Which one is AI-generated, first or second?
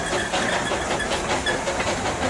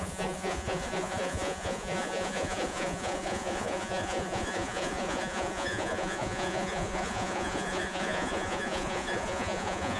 second